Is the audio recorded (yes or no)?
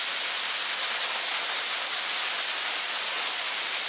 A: yes